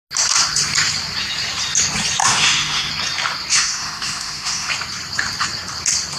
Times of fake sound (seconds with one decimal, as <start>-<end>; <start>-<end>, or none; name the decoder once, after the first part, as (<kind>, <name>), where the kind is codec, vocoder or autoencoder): 2.2-2.9 (autoencoder, DAC-VAE); 3.5-4.7